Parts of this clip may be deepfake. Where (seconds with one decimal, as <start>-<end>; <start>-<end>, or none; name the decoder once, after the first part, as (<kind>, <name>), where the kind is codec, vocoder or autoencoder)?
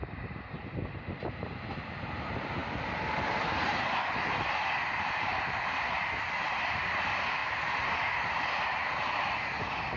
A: none